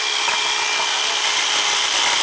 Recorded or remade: recorded